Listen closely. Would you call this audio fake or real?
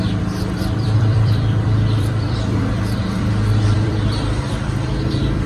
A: fake